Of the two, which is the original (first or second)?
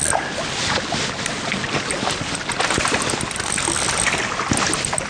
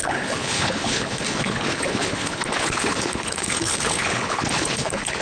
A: first